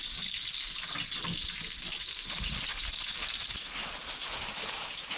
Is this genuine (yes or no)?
yes